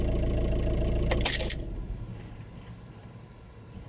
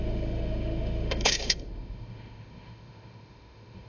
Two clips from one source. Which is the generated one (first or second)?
second